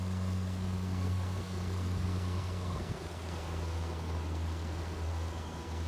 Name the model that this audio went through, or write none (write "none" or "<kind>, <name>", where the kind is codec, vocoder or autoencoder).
codec, SNAC